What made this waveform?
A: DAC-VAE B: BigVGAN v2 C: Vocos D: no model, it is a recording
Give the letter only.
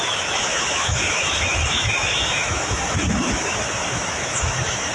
A